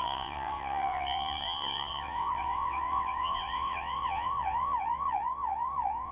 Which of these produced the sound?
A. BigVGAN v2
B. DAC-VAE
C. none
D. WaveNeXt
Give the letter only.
D